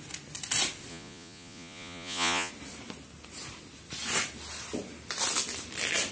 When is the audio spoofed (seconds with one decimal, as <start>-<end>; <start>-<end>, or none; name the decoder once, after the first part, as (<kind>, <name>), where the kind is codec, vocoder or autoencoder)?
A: 0.9-2.5 (vocoder, Vocos)